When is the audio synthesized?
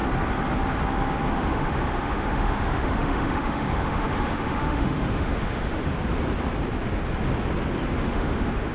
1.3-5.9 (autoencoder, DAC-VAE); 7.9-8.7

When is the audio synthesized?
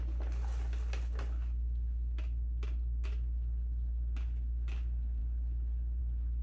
none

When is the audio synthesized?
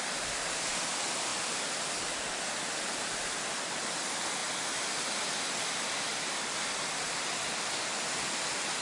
none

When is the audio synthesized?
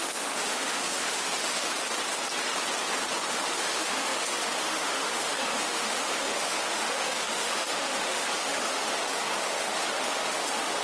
0.0-1.7 (autoencoder, DAC-VAE); 3.3-10.8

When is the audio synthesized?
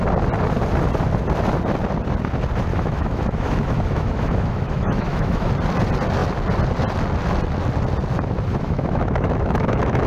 2.7-5.5 (autoencoder, DAC-VAE); 8.5-10.1